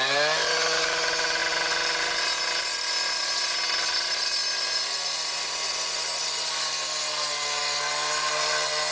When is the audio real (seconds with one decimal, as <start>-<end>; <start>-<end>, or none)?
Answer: 0.0-8.9